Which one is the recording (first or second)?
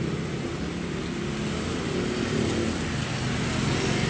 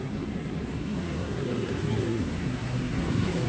first